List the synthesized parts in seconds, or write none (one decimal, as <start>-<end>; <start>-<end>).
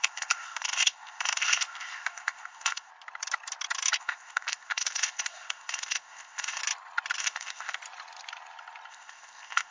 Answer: 0.0-2.9; 4.0-6.6; 7.2-7.8; 8.9-9.7